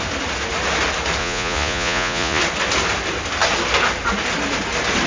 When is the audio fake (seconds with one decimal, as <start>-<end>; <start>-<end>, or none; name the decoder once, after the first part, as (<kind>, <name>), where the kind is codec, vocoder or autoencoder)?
1.2-2.4 (vocoder, Vocos)